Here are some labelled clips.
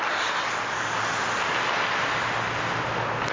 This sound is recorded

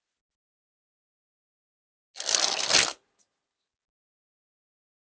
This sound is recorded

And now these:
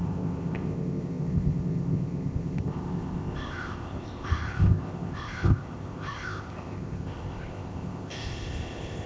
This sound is remade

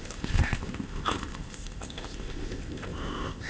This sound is remade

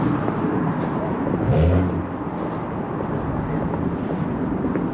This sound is recorded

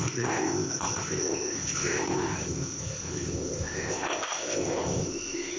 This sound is remade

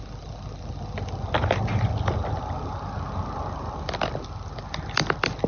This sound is recorded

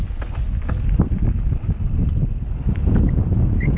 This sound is recorded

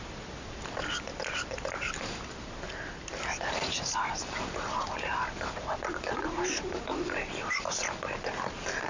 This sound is recorded